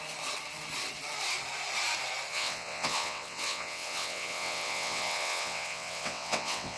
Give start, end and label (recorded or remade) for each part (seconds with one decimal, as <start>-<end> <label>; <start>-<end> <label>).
0.0-2.3 recorded; 2.3-6.8 remade

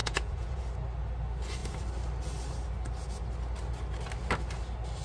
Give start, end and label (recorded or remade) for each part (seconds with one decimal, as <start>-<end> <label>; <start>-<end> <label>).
0.0-0.6 remade; 0.6-5.0 recorded